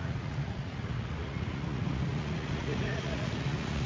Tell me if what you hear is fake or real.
fake